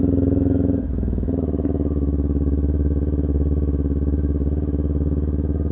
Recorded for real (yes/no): no